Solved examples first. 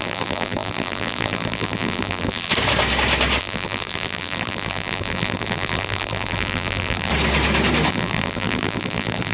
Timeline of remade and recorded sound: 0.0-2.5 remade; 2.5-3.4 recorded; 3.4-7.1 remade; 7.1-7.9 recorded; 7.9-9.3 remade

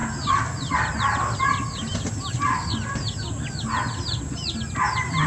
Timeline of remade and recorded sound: 0.0-5.3 recorded

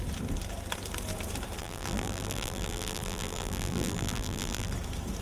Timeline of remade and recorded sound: 0.0-1.6 recorded; 1.6-4.7 remade; 4.7-5.2 recorded

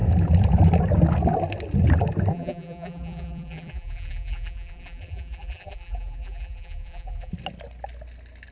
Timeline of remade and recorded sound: 0.0-2.3 recorded; 2.3-7.3 remade; 7.3-8.5 recorded

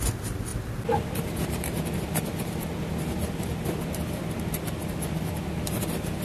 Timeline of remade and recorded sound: 0.0-4.8 recorded; 4.8-6.2 remade